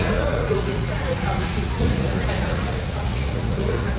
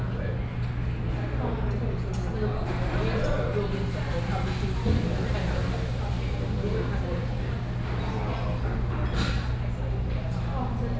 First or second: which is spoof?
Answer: first